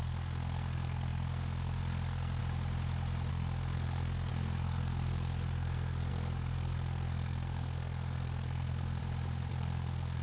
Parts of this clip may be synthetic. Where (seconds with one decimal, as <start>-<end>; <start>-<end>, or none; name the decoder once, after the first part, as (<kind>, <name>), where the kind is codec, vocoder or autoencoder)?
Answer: 0.0-2.4 (codec, SNAC); 3.3-9.0; 9.5-10.2

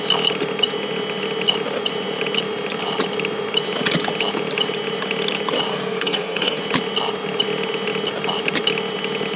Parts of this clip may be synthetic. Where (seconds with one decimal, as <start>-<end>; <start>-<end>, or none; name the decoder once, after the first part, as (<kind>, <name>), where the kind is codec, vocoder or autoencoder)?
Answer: 5.7-6.6 (codec, SNAC)

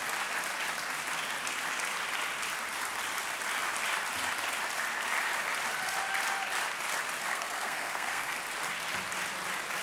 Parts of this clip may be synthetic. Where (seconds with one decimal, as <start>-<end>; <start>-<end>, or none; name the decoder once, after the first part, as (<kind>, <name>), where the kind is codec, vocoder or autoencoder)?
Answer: 7.3-8.4 (codec, SNAC)

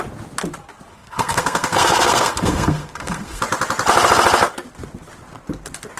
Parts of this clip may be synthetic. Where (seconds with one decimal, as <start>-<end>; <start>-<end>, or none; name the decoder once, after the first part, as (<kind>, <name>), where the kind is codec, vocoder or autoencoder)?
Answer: 0.9-3.4 (codec, SNAC)

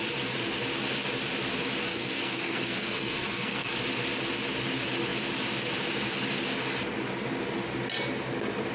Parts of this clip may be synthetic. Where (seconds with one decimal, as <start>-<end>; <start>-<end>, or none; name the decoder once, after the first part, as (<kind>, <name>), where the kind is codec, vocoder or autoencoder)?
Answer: 1.9-3.8 (codec, SNAC)